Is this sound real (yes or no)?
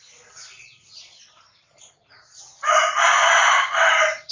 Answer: yes